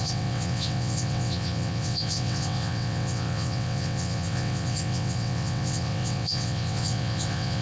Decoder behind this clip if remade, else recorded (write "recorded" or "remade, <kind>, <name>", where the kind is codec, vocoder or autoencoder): remade, vocoder, WaveNeXt